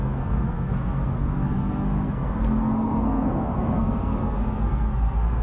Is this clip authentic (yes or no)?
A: no